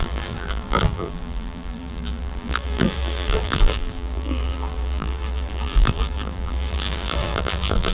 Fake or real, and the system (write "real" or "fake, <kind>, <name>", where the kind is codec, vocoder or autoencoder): fake, vocoder, BigVGAN v2